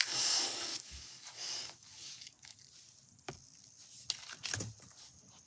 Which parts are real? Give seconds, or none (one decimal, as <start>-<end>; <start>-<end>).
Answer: 0.0-0.7; 2.5-5.5